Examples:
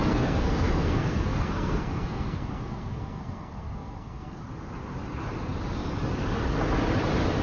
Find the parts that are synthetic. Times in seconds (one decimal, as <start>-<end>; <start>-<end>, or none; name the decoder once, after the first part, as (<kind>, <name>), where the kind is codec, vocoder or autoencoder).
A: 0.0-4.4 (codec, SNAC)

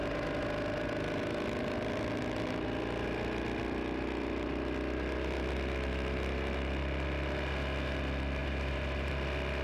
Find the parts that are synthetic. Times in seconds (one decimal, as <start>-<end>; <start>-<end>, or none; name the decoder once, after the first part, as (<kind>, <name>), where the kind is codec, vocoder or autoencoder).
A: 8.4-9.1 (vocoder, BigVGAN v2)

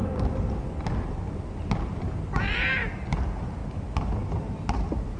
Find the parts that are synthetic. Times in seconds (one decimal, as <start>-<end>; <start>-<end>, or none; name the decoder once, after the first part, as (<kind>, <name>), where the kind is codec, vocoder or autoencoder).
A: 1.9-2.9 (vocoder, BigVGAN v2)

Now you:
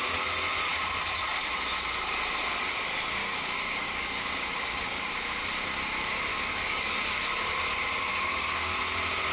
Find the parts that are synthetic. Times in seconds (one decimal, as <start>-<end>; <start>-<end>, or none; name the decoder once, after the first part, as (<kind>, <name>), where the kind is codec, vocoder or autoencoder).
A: 3.2-5.4 (codec, DAC); 6.3-7.0; 8.1-8.8

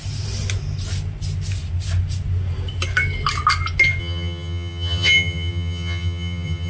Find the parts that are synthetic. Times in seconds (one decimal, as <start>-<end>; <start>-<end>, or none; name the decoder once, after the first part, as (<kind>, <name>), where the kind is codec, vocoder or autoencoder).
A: 4.0-6.7 (vocoder, HiFi-GAN)

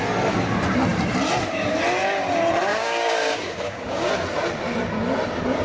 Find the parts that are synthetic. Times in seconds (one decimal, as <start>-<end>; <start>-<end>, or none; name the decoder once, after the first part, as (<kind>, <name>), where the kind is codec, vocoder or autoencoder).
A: 2.7-4.1 (codec, DAC)

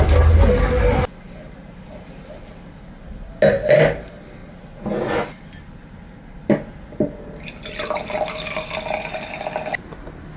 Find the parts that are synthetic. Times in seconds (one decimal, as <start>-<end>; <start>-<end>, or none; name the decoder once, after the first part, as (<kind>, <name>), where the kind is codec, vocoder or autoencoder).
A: none